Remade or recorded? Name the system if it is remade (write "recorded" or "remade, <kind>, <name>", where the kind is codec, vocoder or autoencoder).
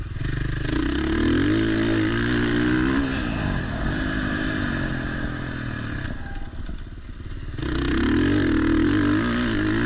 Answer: recorded